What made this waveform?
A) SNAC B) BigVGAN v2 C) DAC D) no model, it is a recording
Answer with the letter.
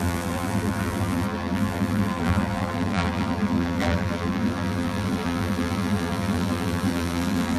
B